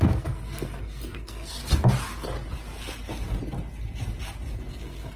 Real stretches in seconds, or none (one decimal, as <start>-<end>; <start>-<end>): 1.6-4.7